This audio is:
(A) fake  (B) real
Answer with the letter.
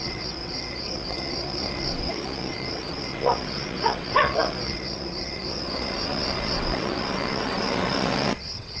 A